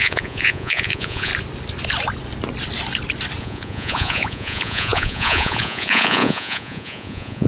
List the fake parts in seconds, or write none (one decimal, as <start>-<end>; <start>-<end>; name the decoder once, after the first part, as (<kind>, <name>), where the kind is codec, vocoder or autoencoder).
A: 0.0-1.3 (vocoder, Vocos); 3.4-7.5